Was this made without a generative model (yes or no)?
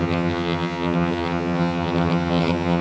no